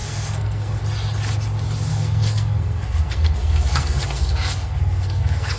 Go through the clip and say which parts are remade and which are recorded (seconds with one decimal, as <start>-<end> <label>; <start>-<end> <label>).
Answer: 0.0-0.8 remade; 0.8-1.9 recorded; 1.9-5.6 remade